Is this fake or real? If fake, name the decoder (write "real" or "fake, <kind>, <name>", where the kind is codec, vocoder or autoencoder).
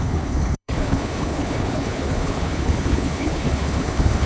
fake, codec, HILCodec